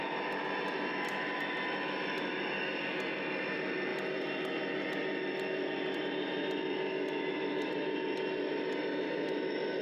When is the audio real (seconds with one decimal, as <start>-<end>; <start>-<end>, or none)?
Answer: 0.0-9.8